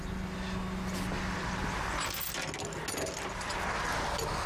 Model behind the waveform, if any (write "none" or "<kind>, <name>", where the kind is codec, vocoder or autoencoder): none